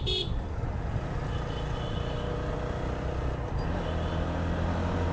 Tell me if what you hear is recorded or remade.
recorded